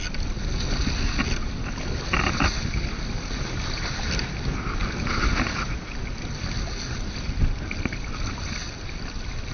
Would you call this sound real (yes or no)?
yes